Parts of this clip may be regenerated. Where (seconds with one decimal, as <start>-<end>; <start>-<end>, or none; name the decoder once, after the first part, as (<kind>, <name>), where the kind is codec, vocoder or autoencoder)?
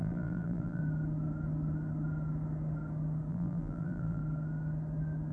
0.0-0.8 (vocoder, BigVGAN v2); 3.3-4.2